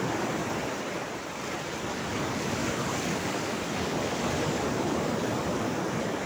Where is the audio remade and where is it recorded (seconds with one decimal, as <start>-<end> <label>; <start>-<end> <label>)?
0.0-0.4 remade; 0.4-1.8 recorded; 1.8-6.3 remade